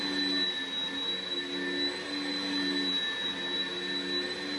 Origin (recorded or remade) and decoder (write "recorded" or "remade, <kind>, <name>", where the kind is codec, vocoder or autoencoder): recorded